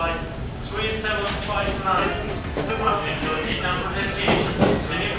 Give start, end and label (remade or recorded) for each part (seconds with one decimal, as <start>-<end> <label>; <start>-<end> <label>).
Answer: 0.0-2.0 recorded; 2.0-3.6 remade; 3.6-5.2 recorded